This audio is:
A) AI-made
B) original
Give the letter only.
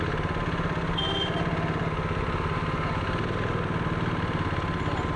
B